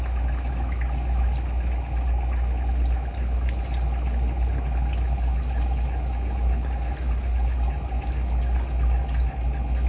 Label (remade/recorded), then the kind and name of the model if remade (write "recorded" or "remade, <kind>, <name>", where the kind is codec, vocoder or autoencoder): recorded